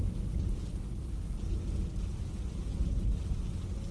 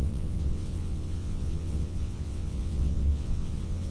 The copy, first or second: second